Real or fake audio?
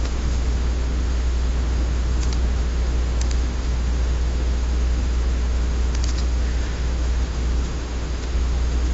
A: fake